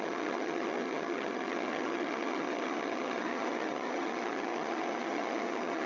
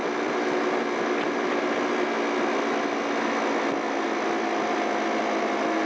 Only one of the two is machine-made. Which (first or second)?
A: first